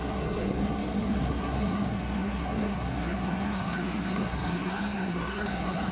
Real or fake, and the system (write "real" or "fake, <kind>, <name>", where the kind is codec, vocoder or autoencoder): fake, codec, SNAC